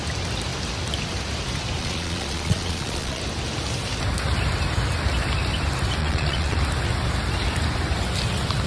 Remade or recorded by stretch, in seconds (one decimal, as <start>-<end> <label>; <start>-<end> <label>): 0.0-1.8 recorded; 1.8-3.2 remade; 3.2-6.0 recorded; 6.0-6.6 remade; 6.6-8.7 recorded